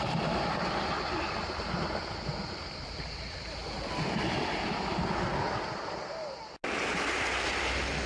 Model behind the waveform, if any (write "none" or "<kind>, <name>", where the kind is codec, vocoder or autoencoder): none